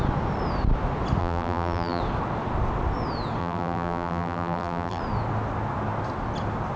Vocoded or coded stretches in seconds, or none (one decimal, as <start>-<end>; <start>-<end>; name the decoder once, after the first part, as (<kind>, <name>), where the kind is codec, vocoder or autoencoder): 1.2-2.0 (vocoder, BigVGAN v2); 3.4-5.0